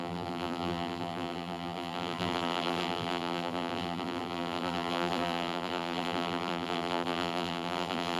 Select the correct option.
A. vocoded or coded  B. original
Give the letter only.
A